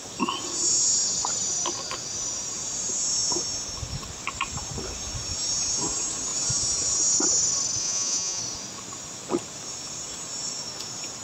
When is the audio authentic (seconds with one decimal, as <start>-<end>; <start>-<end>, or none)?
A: 0.0-7.8; 8.4-11.2

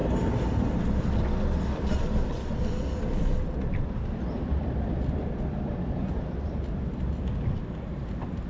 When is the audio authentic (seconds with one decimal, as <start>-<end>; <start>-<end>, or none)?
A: 0.0-4.5; 7.1-8.5

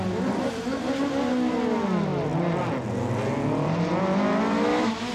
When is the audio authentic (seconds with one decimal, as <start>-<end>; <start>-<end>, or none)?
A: 0.0-5.1

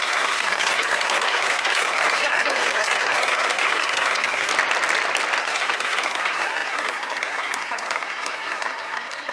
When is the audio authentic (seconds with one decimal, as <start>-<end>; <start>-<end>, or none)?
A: 4.5-5.4

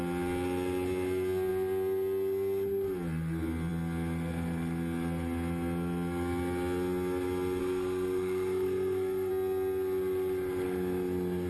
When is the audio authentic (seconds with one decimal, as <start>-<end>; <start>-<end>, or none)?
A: 0.0-7.6; 9.3-11.5

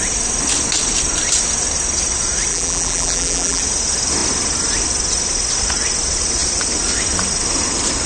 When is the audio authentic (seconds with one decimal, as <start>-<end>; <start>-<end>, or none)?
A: 0.0-2.5; 3.6-8.1